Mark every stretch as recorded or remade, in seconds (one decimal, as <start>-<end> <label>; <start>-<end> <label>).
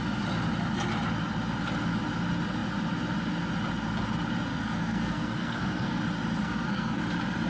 0.0-4.5 recorded; 4.5-6.0 remade; 6.0-6.4 recorded; 6.4-7.0 remade; 7.0-7.5 recorded